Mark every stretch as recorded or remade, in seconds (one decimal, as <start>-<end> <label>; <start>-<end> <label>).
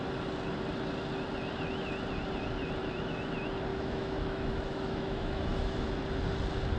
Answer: 0.0-2.8 recorded; 2.8-3.3 remade; 3.3-3.7 recorded; 3.7-5.9 remade; 5.9-6.8 recorded